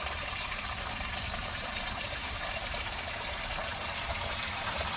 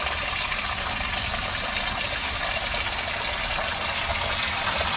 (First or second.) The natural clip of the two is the second